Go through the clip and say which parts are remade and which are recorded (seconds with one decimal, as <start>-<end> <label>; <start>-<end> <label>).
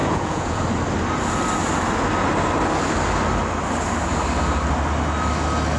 0.0-0.6 remade; 0.6-5.8 recorded